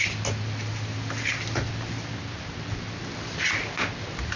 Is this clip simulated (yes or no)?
no